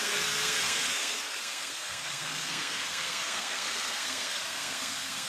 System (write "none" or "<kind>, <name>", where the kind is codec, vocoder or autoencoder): codec, SNAC